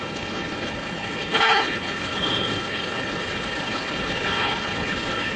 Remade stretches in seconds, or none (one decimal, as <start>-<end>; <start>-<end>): 0.0-5.4